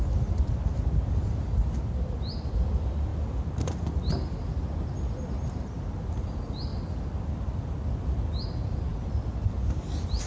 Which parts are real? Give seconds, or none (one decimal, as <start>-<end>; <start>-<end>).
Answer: 0.0-10.3